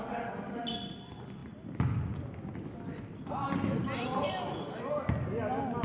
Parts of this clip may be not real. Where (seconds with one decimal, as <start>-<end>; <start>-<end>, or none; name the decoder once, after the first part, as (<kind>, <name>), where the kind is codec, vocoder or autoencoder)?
none